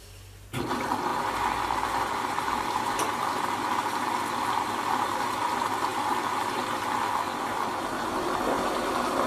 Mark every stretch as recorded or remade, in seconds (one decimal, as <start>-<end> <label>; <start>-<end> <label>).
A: 0.0-9.3 recorded

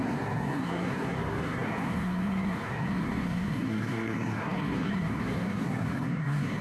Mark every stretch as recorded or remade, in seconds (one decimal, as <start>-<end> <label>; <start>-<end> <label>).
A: 0.0-6.6 remade

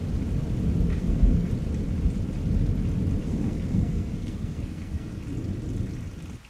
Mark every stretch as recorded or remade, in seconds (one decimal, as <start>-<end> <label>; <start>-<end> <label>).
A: 0.0-0.9 recorded; 0.9-1.5 remade; 1.5-3.2 recorded; 3.2-5.2 remade; 5.2-6.5 recorded

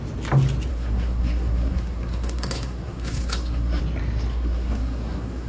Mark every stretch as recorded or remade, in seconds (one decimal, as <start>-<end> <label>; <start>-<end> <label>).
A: 0.0-0.7 recorded; 0.7-3.8 remade; 3.8-4.3 recorded; 4.3-5.5 remade

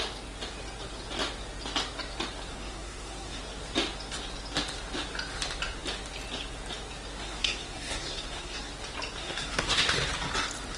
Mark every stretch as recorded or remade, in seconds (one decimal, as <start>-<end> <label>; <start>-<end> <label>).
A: 0.0-2.5 recorded; 2.5-3.4 remade; 3.4-7.2 recorded; 7.2-8.7 remade; 8.7-9.2 recorded; 9.2-9.9 remade; 9.9-10.8 recorded

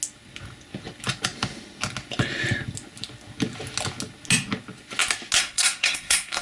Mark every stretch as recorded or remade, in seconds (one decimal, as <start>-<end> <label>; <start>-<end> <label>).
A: 0.0-5.4 recorded; 5.4-6.4 remade

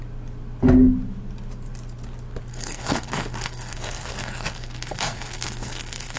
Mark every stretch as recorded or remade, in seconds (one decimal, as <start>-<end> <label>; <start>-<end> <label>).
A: 0.0-2.5 recorded; 2.5-6.2 remade

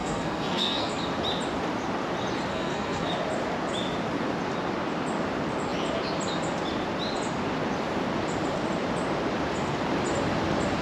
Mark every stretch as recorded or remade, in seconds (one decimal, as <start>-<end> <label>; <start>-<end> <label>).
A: 0.0-0.9 remade; 0.9-2.5 recorded; 2.5-3.1 remade; 3.1-10.8 recorded